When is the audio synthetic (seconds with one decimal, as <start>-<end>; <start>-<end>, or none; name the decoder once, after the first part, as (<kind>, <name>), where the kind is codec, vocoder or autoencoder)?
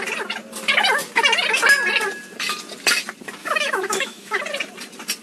3.4-4.4 (autoencoder, DAC-VAE)